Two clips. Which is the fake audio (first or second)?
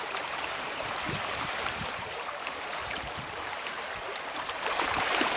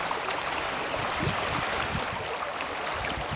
first